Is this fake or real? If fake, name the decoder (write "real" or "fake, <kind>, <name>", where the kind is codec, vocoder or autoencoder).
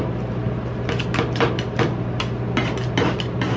real